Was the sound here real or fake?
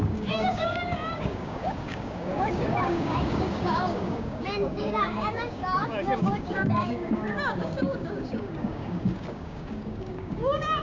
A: fake